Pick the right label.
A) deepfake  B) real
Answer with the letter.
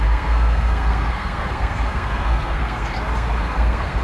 A